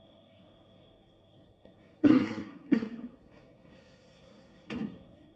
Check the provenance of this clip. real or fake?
fake